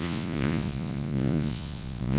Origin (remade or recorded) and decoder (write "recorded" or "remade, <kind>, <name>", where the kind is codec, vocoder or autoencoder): remade, vocoder, Vocos